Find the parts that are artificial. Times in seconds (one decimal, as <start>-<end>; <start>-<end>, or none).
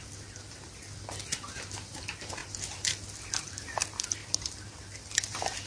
none